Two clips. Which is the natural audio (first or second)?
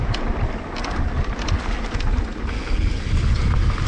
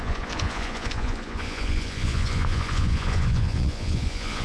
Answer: first